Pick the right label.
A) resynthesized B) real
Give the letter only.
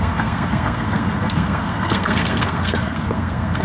A